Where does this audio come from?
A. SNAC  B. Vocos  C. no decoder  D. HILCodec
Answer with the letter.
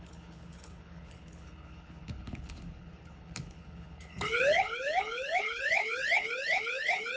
D